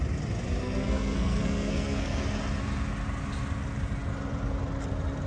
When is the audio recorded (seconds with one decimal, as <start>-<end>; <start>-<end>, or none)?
0.0-0.6; 2.2-5.3